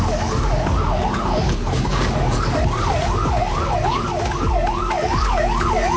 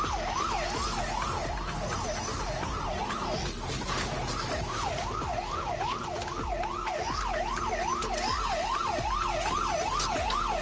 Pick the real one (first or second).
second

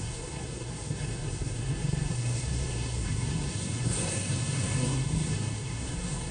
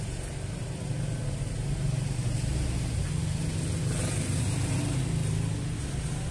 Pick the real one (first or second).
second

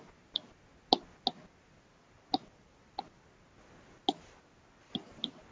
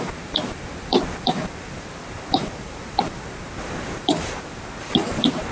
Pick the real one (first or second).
first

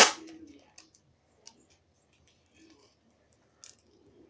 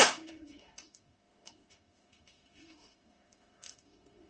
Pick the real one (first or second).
first